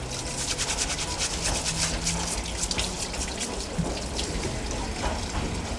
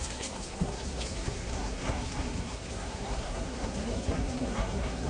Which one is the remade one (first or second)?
second